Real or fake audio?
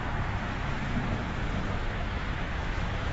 fake